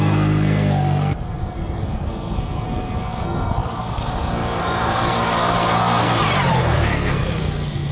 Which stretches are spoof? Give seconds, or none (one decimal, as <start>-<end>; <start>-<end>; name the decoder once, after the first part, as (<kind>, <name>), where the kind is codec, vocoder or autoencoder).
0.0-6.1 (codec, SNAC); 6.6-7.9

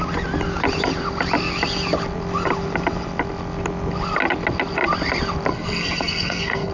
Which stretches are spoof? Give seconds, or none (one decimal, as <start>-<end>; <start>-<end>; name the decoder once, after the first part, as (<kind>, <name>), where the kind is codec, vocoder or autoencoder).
5.5-6.7 (codec, SNAC)

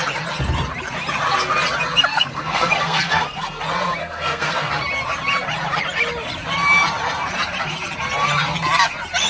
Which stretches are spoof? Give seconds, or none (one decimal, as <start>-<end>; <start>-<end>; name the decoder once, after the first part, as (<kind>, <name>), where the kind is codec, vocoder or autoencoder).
2.1-3.6 (codec, SNAC); 4.0-4.7

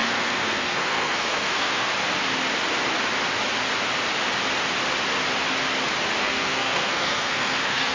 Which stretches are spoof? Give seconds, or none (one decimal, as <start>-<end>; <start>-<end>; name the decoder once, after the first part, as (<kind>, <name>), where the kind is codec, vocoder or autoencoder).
0.0-1.9 (codec, SNAC); 6.2-7.9

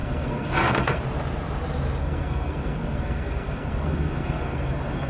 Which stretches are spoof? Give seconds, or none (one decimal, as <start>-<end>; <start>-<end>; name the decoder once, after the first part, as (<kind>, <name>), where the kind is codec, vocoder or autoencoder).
0.0-1.0 (codec, SNAC); 2.0-5.1